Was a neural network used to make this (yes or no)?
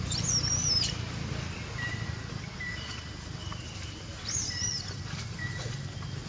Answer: no